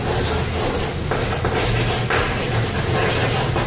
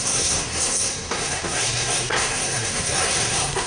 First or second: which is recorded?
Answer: first